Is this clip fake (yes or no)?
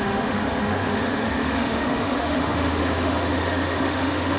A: yes